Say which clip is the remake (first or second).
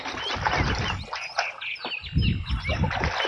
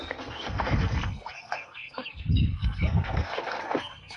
second